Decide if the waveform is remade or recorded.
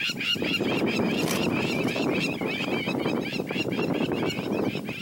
recorded